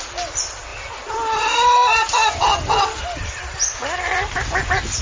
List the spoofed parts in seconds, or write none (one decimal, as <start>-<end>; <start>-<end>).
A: none